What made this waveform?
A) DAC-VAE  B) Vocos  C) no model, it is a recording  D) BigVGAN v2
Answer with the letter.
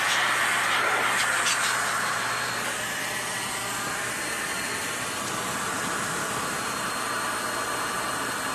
C